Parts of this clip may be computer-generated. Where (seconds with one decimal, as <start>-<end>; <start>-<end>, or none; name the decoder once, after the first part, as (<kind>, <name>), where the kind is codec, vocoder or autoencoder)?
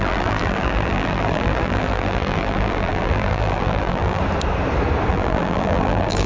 0.0-4.2 (vocoder, BigVGAN v2); 5.1-6.3